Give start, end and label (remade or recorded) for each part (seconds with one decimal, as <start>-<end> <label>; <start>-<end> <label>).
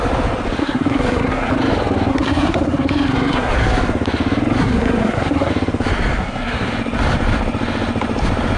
0.0-0.6 recorded; 0.6-1.5 remade; 1.5-2.1 recorded; 2.1-3.5 remade; 3.5-4.6 recorded; 4.6-5.5 remade; 5.5-6.2 recorded; 6.2-6.7 remade; 6.7-8.6 recorded